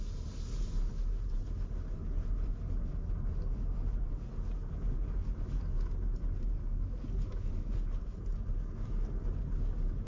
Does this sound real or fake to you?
real